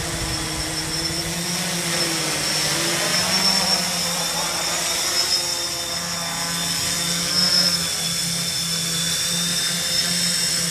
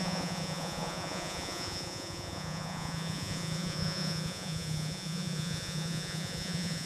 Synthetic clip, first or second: second